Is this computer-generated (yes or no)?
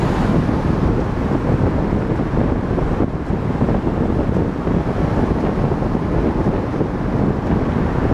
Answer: no